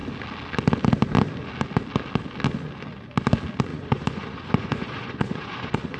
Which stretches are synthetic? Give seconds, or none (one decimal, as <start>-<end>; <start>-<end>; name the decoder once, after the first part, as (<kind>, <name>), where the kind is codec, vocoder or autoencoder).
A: 3.7-6.0 (vocoder, Vocos)